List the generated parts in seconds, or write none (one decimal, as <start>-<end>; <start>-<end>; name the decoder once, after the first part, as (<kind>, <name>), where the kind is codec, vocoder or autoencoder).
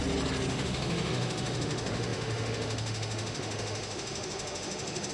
0.5-5.1 (autoencoder, DAC-VAE)